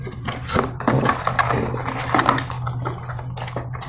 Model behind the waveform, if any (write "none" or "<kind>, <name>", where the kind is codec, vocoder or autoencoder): none